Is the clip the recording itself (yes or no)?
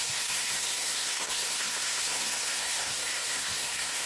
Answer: no